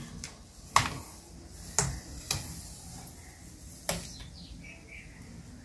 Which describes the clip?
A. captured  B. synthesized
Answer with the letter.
A